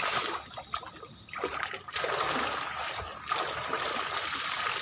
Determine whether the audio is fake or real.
real